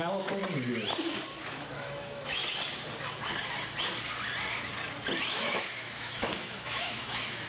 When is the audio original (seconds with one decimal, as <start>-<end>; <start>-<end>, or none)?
0.4-1.4; 2.4-5.3